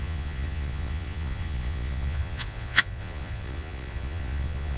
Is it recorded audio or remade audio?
remade